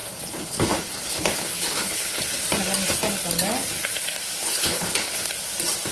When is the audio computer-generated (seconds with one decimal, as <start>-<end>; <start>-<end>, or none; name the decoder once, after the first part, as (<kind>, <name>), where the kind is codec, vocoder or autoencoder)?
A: 0.0-2.2 (codec, HILCodec); 4.4-5.3